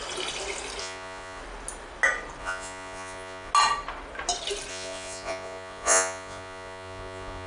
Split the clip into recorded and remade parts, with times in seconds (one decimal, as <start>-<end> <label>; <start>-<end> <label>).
0.0-0.8 recorded; 0.8-1.4 remade; 1.4-2.4 recorded; 2.4-3.5 remade; 3.5-4.7 recorded; 4.7-7.5 remade